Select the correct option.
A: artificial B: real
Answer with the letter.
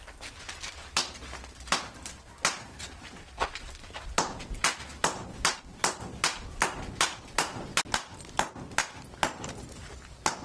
B